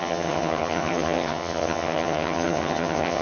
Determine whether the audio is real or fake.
fake